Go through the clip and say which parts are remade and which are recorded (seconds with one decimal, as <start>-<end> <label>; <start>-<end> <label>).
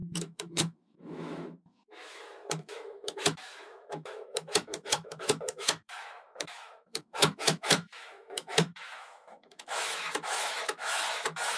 0.0-11.6 remade